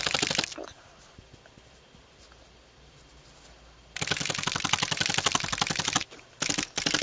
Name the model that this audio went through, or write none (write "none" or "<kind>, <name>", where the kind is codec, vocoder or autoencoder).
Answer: none